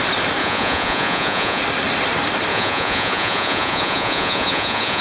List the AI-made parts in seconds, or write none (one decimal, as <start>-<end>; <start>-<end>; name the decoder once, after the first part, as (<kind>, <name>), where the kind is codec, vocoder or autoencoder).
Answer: 0.4-1.6 (vocoder, Vocos); 2.5-5.0